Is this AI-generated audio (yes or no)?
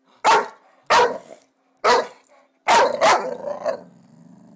no